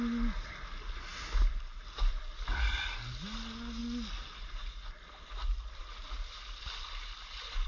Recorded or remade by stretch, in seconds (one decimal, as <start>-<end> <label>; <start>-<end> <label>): 0.0-7.7 recorded